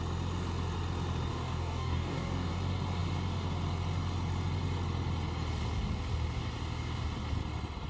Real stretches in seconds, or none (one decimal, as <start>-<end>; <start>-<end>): 0.0-1.3; 2.5-7.9